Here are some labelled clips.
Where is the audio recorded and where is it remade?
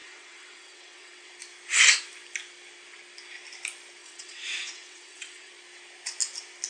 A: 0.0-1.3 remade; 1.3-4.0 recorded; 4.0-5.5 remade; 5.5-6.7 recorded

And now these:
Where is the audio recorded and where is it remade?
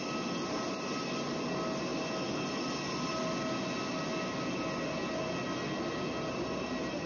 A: 0.0-7.1 recorded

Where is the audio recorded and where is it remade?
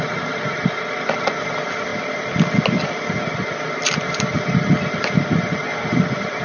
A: 0.0-6.4 recorded